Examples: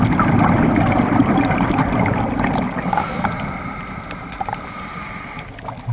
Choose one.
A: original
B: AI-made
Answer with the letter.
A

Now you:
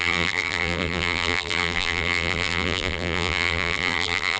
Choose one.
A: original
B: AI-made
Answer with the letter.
B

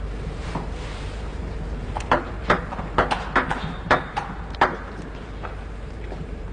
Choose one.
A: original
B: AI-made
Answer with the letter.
B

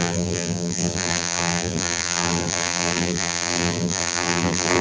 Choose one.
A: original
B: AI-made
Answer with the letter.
B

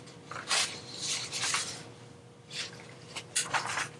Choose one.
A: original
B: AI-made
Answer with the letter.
B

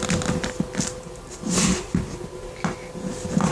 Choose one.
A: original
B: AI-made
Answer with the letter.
B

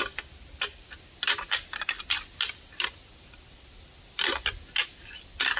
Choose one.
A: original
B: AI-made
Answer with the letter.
A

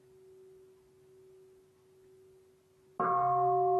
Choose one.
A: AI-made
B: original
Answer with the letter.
B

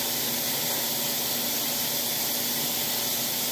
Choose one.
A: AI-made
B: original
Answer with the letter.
A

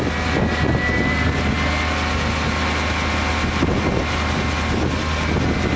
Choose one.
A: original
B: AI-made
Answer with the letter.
A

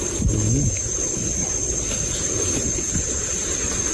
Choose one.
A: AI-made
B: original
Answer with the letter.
B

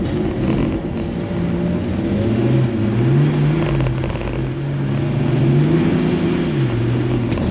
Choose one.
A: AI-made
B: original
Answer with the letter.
B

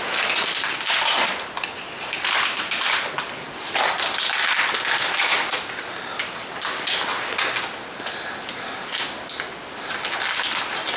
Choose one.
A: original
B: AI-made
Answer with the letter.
A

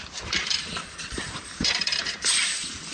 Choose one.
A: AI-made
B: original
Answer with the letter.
A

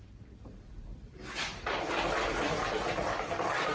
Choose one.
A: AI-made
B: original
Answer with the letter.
A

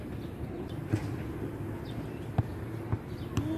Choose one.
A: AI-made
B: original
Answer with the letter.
B